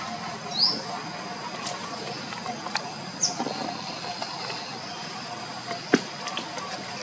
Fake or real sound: real